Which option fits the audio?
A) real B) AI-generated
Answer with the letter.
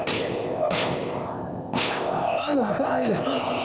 B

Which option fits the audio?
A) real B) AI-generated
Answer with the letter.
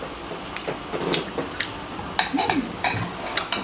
A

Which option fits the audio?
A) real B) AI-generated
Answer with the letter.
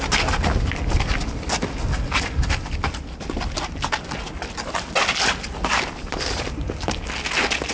A